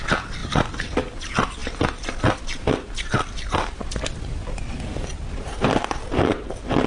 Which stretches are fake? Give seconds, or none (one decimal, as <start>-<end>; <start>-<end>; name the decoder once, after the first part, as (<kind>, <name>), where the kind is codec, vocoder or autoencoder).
0.4-1.0 (vocoder, BigVGAN v2); 5.1-5.8